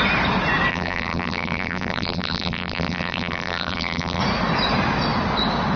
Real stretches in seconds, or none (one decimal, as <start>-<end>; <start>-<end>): 0.0-0.7; 4.2-5.8